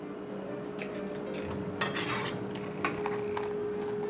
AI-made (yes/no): no